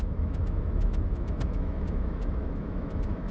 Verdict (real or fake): fake